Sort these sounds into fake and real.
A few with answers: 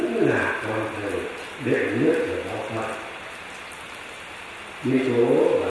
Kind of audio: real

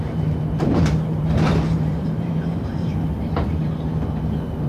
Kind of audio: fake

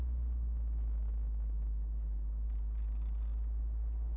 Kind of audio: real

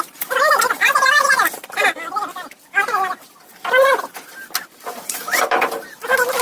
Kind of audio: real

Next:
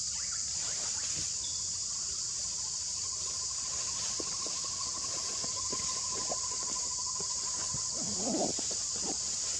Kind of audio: fake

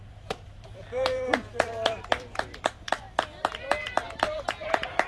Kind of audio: fake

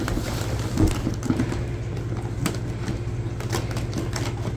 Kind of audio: real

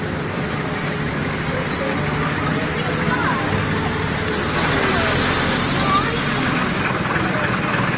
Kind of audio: real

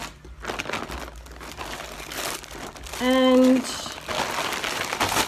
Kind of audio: real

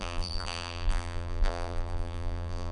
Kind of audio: fake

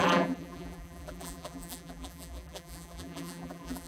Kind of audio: fake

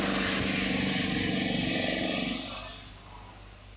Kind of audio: real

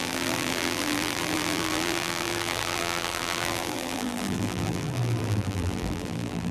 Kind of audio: fake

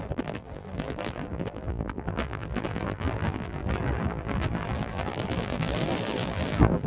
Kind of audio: fake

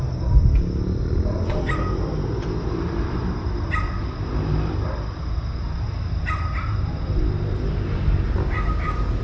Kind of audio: real